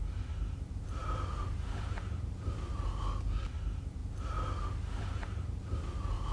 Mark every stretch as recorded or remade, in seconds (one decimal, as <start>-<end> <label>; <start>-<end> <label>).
0.0-1.0 recorded; 1.0-2.9 remade; 2.9-5.2 recorded; 5.2-6.3 remade